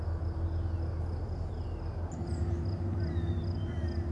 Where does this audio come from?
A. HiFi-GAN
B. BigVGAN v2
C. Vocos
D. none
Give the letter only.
D